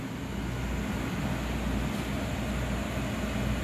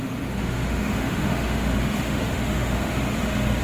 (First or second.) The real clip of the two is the first